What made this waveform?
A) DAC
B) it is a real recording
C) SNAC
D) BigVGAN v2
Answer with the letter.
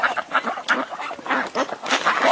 B